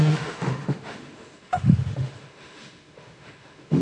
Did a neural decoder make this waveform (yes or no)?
yes